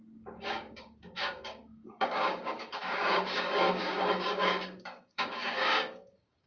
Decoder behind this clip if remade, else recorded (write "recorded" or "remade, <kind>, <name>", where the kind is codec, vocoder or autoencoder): remade, codec, DAC